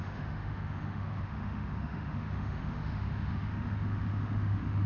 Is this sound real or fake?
fake